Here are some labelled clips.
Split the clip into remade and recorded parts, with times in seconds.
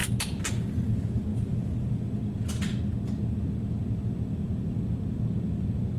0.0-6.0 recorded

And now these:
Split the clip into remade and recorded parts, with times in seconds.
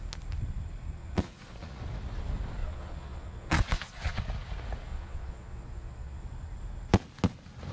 0.0-1.0 recorded; 1.0-1.8 remade; 1.8-2.6 recorded; 2.6-4.2 remade; 4.2-4.9 recorded; 4.9-6.2 remade; 6.2-7.7 recorded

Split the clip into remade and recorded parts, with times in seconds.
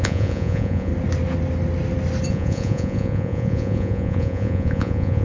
0.0-0.9 remade; 0.9-2.3 recorded; 2.3-5.2 remade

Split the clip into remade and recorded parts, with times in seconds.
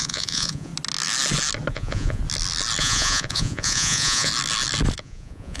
0.0-0.7 remade; 0.7-1.7 recorded; 1.7-2.2 remade; 2.2-2.8 recorded; 2.8-4.3 remade; 4.3-5.0 recorded; 5.0-5.6 remade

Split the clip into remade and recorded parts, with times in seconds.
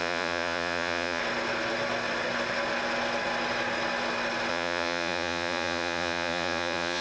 0.0-1.2 remade; 1.2-4.5 recorded; 4.5-7.0 remade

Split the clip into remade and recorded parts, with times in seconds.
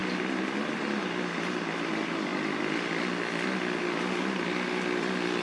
0.0-5.4 recorded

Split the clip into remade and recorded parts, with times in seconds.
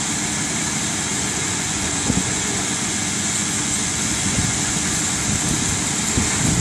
0.0-1.1 recorded; 1.1-5.1 remade; 5.1-6.6 recorded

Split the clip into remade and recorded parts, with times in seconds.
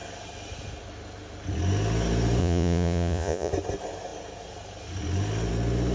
0.0-2.4 recorded; 2.4-3.5 remade; 3.5-5.9 recorded